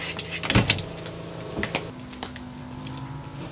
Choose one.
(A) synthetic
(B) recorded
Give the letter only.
B